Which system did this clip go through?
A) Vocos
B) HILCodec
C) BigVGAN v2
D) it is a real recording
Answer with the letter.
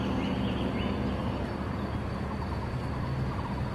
C